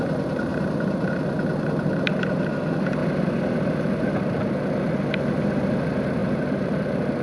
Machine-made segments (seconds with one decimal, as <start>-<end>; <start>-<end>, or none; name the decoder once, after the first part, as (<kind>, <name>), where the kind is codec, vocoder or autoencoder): 6.2-7.2 (vocoder, BigVGAN v2)